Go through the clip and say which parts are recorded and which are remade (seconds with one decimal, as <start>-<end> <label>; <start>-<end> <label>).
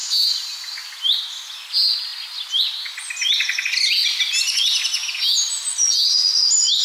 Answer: 0.0-6.8 recorded